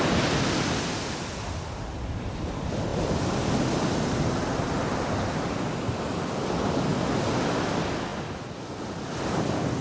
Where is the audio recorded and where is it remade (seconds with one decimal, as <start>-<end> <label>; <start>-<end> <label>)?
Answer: 0.0-9.8 recorded